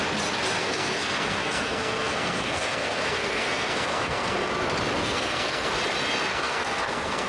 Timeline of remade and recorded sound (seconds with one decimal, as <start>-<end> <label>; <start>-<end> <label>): 0.0-0.6 recorded; 0.6-4.5 remade; 4.5-5.0 recorded; 5.0-5.7 remade; 5.7-6.3 recorded; 6.3-7.3 remade